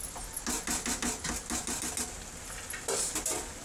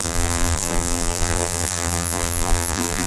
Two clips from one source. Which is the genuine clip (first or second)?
first